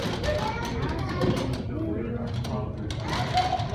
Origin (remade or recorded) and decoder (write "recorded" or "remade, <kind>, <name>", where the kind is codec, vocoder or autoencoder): recorded